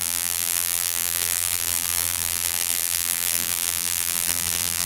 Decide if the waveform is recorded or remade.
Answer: remade